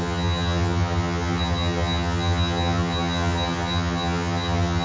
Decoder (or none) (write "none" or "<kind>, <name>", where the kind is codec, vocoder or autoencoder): vocoder, HiFi-GAN